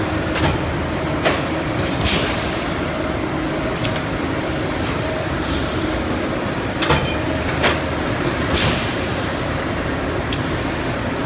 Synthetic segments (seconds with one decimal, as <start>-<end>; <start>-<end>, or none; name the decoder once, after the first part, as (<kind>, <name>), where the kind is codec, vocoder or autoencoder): 0.0-11.3 (vocoder, BigVGAN v2)